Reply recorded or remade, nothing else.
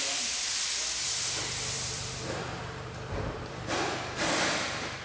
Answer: remade